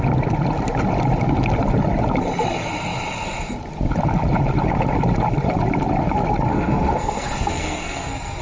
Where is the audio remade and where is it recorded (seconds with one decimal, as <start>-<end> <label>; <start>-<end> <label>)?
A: 0.0-6.5 recorded; 6.5-8.4 remade